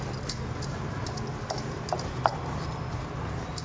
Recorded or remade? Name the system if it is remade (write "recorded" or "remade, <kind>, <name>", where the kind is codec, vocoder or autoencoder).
recorded